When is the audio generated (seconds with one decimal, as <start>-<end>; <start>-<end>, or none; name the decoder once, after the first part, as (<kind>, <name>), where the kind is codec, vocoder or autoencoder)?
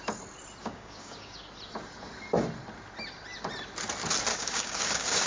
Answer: 0.6-1.4 (codec, DAC); 4.3-5.3